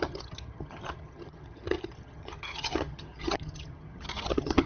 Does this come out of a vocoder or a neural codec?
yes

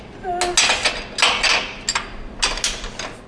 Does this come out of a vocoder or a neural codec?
no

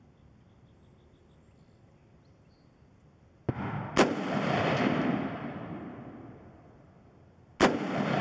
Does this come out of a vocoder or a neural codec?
no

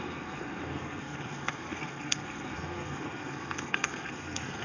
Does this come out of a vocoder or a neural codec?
yes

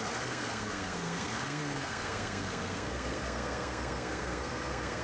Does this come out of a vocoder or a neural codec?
yes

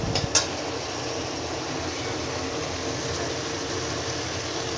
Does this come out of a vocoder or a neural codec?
yes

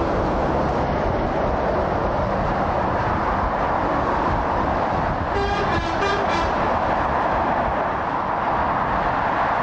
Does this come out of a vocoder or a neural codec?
no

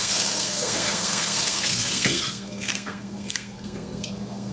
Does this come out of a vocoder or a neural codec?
yes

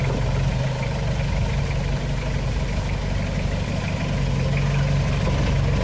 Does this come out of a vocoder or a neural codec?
no